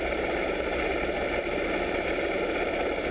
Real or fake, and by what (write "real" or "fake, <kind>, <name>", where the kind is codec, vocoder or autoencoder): real